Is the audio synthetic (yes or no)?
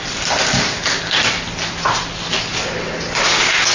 no